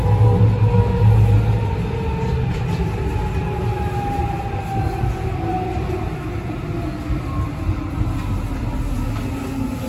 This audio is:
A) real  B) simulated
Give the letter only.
A